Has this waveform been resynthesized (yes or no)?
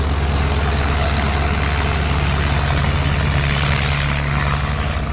no